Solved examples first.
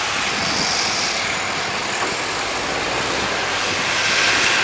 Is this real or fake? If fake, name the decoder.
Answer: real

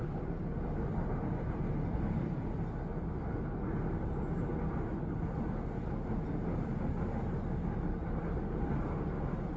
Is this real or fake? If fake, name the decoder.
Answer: real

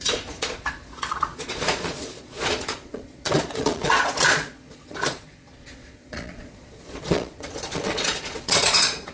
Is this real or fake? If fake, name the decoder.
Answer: fake, vocoder, Vocos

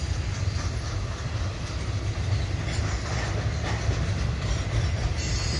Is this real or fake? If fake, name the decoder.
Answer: real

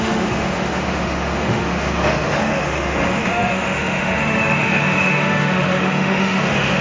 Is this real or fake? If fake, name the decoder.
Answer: fake, autoencoder, DAC-VAE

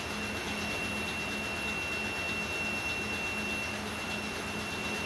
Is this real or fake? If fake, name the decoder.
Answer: real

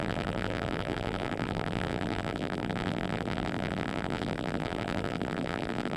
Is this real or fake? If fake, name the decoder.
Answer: fake, vocoder, BigVGAN v2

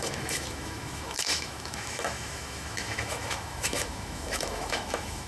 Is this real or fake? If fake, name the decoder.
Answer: fake, autoencoder, DAC-VAE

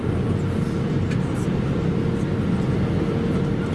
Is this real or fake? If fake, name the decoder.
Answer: real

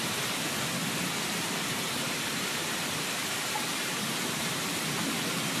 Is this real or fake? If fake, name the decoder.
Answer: fake, vocoder, BigVGAN v2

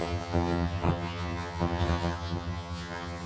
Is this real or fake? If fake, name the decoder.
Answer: fake, vocoder, HiFi-GAN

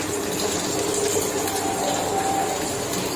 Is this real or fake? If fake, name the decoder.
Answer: real